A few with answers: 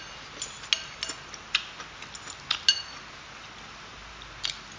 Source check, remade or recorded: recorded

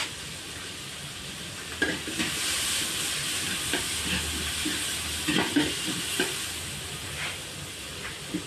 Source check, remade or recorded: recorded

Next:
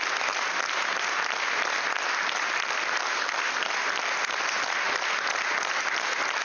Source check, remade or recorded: recorded